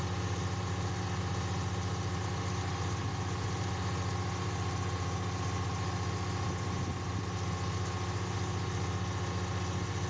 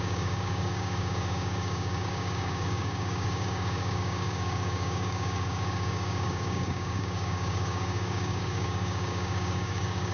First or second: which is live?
first